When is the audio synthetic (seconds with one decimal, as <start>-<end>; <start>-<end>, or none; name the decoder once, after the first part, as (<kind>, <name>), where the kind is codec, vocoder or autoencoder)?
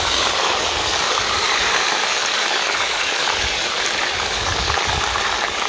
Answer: 0.0-5.7 (codec, DAC)